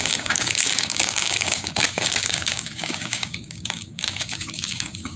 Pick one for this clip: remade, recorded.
remade